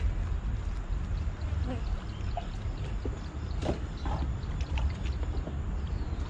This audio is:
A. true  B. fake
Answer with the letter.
A